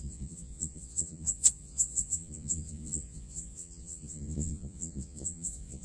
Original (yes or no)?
no